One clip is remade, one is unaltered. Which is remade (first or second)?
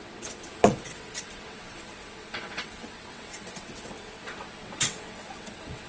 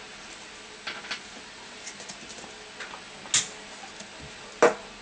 first